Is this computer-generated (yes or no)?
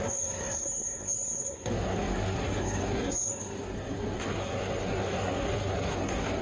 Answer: yes